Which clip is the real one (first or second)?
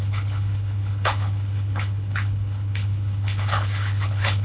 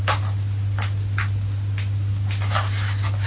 second